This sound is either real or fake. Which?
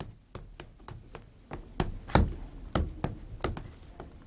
real